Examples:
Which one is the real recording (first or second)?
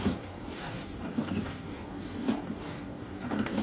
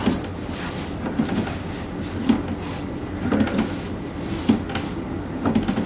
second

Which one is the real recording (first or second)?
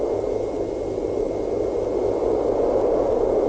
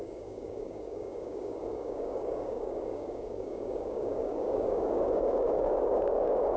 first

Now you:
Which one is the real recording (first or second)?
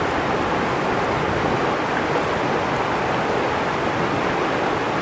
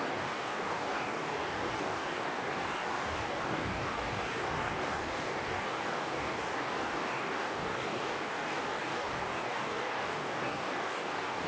first